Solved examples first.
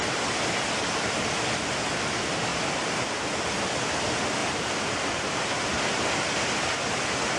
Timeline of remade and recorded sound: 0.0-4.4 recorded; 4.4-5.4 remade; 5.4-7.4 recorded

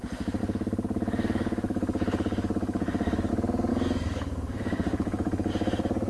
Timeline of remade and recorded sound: 0.0-0.4 recorded; 0.4-3.3 remade; 3.3-3.7 recorded; 3.7-5.5 remade; 5.5-6.1 recorded

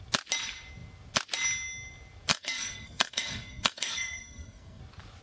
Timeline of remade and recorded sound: 0.0-2.3 recorded; 2.3-4.8 remade; 4.8-5.2 recorded

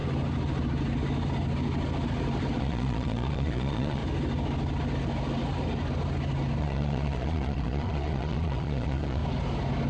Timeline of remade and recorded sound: 0.0-2.6 recorded; 2.6-4.0 remade; 4.0-6.6 recorded; 6.6-9.2 remade; 9.2-9.9 recorded

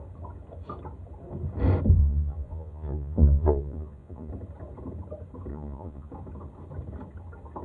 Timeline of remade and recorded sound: 0.0-2.0 recorded; 2.0-4.3 remade; 4.3-5.5 recorded; 5.5-6.1 remade; 6.1-7.6 recorded

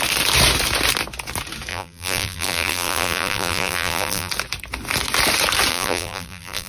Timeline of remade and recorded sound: 0.0-1.7 recorded; 1.7-4.3 remade; 4.3-5.7 recorded; 5.7-6.7 remade

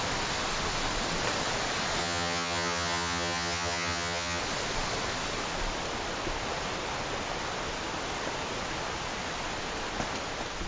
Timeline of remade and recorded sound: 0.0-2.0 recorded; 2.0-4.4 remade; 4.4-10.7 recorded